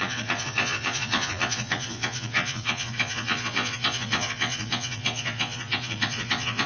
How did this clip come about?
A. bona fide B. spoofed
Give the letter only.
B